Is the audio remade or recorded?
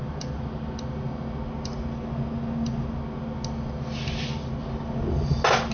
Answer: recorded